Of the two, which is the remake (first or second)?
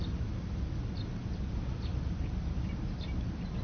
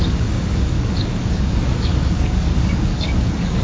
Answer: second